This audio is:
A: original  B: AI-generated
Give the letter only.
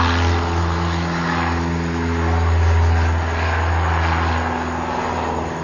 A